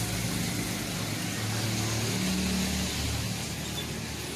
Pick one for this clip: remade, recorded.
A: recorded